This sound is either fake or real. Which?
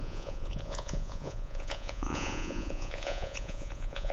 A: fake